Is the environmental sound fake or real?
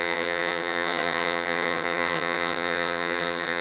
fake